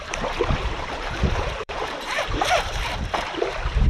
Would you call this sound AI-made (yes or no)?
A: yes